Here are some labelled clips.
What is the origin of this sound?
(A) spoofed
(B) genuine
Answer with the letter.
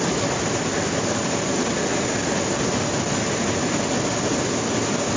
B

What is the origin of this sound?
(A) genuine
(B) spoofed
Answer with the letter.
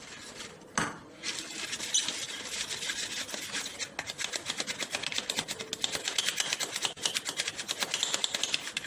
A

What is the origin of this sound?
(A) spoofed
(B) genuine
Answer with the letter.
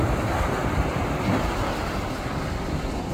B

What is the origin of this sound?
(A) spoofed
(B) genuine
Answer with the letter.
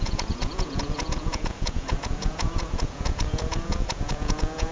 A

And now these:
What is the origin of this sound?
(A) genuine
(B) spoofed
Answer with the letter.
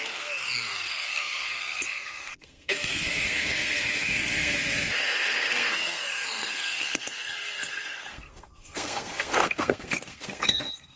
B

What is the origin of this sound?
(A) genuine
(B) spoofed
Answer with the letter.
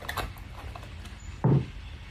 A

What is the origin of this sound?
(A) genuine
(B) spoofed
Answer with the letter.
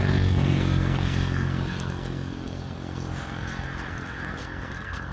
B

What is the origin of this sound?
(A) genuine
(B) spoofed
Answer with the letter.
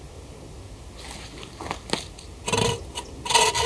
A